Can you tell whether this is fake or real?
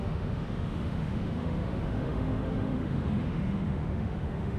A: fake